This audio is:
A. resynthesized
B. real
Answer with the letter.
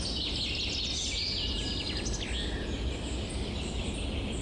B